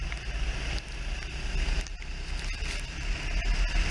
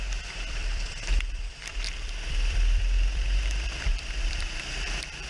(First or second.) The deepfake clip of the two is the second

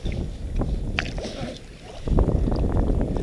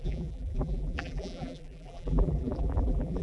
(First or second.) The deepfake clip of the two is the second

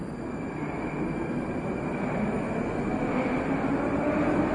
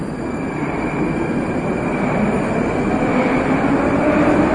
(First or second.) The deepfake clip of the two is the second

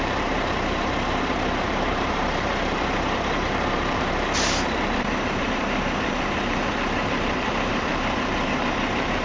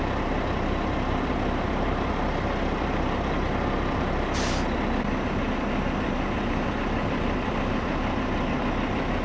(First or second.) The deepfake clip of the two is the first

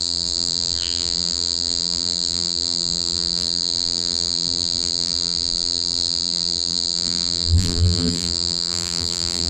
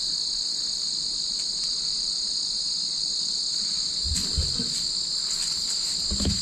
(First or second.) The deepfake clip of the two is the first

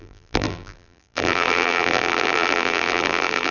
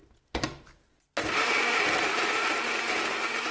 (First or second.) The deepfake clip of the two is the first